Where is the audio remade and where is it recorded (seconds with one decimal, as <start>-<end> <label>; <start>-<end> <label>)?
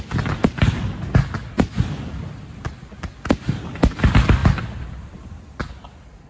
0.0-6.3 recorded